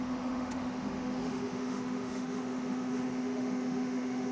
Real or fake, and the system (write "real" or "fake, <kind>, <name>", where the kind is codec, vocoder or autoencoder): fake, autoencoder, DAC-VAE